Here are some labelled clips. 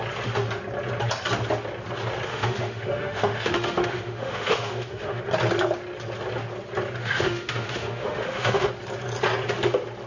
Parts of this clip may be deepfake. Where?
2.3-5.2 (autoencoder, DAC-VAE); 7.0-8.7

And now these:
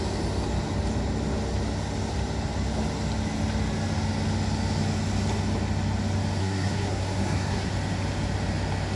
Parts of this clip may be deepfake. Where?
6.4-7.7 (codec, SNAC)